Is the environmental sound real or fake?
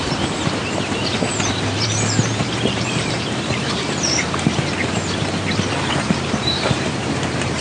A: fake